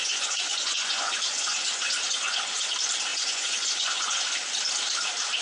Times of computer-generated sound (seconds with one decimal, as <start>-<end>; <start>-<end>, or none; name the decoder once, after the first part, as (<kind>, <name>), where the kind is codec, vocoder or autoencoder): 0.0-2.7 (vocoder, Vocos); 3.1-4.2